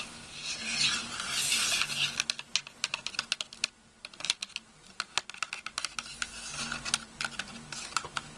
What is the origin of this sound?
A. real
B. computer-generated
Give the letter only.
A